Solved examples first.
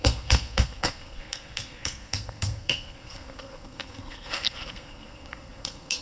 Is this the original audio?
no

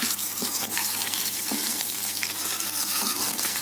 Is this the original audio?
no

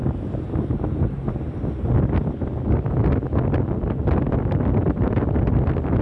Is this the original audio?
yes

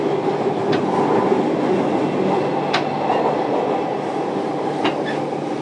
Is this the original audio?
yes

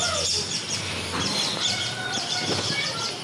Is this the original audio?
yes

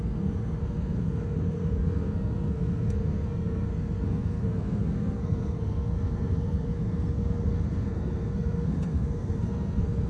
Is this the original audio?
no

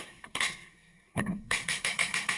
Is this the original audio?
no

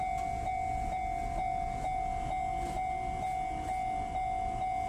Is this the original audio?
yes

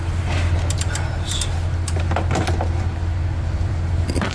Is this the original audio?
yes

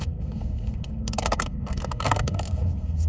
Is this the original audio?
no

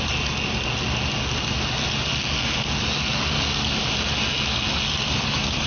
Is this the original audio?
yes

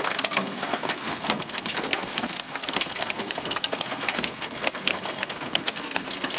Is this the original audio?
no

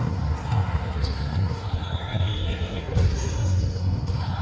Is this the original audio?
no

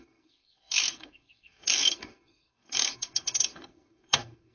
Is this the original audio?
no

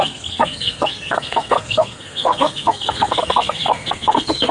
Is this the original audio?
no